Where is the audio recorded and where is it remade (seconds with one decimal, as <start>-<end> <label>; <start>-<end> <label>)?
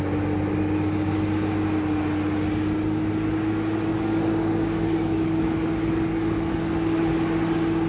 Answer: 0.0-3.9 recorded; 3.9-7.0 remade; 7.0-7.9 recorded